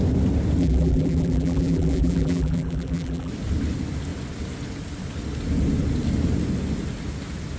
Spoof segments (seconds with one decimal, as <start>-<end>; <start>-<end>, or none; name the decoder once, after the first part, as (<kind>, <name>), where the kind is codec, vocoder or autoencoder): 0.6-3.3 (vocoder, BigVGAN v2)